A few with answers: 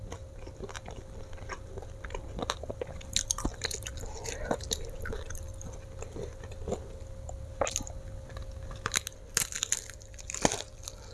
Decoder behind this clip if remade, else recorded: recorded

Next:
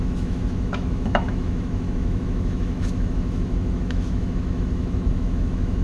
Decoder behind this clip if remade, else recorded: remade, autoencoder, DAC-VAE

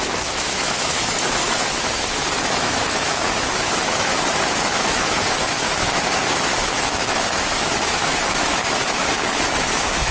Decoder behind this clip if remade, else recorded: remade, autoencoder, DAC-VAE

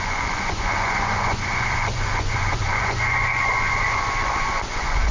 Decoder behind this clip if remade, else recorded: remade, vocoder, Vocos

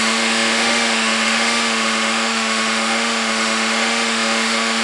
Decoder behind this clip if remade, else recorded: remade, autoencoder, DAC-VAE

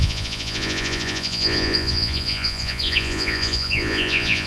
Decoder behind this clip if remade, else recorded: remade, vocoder, Vocos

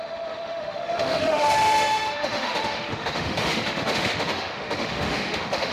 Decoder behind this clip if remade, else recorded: remade, autoencoder, DAC-VAE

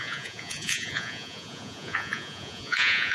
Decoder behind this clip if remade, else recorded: remade, vocoder, Vocos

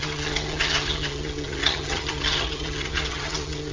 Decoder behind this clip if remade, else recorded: remade, vocoder, HiFi-GAN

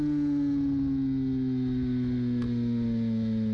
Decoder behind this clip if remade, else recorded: recorded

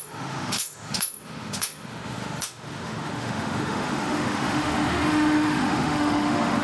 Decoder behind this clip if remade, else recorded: remade, autoencoder, DAC-VAE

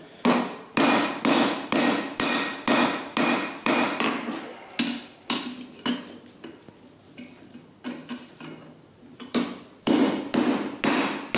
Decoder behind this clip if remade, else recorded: recorded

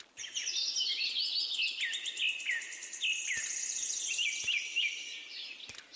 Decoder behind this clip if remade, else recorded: recorded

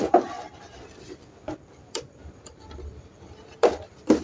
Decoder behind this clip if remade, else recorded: remade, vocoder, BigVGAN v2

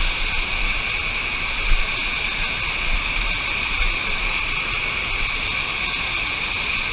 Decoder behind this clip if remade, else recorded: recorded